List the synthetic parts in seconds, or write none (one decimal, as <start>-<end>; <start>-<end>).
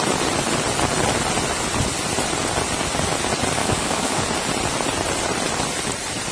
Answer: 3.6-4.2